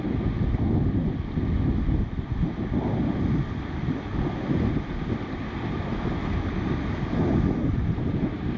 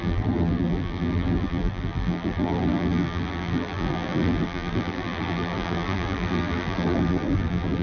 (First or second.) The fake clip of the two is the second